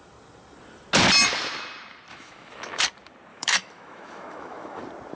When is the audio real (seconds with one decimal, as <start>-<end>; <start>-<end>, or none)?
0.0-2.1; 2.8-3.3; 4.8-5.2